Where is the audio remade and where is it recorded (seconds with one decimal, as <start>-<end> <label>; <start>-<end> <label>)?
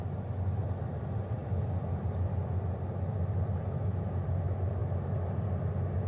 0.0-6.1 recorded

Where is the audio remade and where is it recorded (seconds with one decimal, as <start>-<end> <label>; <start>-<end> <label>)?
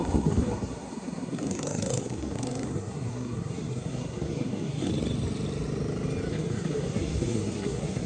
0.0-4.9 remade; 4.9-6.3 recorded; 6.3-8.1 remade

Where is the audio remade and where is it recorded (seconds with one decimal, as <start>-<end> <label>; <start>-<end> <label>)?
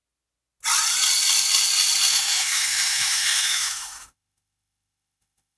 0.0-2.1 recorded; 2.1-5.6 remade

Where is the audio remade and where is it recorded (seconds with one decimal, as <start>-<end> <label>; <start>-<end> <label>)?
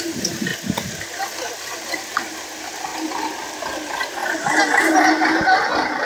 0.0-2.9 remade; 2.9-3.5 recorded; 3.5-4.2 remade; 4.2-5.1 recorded; 5.1-6.0 remade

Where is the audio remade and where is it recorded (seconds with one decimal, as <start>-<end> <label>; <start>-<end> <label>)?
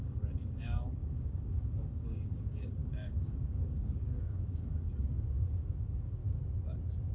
0.0-6.2 remade; 6.2-7.1 recorded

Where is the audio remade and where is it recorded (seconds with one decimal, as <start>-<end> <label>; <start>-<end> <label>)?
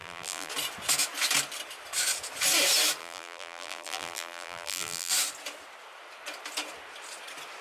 0.0-0.5 remade; 0.5-3.0 recorded; 3.0-5.1 remade; 5.1-7.6 recorded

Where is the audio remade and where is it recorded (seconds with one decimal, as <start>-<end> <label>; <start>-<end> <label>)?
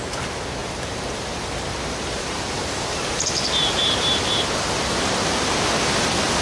0.0-0.6 recorded; 0.6-4.3 remade; 4.3-6.4 recorded